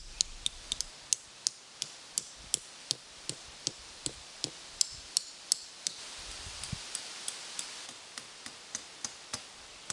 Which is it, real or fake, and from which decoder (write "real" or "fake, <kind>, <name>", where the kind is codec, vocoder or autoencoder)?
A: real